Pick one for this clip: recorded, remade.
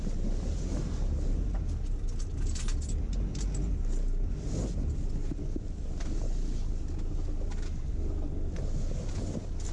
recorded